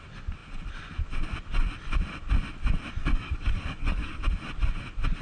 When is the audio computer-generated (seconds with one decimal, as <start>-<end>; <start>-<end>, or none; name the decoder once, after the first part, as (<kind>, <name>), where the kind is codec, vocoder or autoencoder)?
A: 3.0-4.2 (codec, DAC)